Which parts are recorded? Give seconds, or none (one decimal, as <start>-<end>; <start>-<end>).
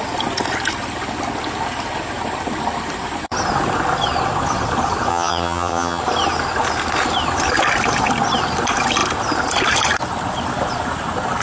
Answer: 0.0-5.1; 6.0-11.4